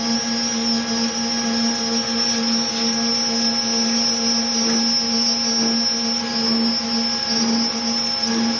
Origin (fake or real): real